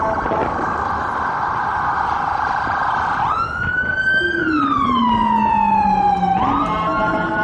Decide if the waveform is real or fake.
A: real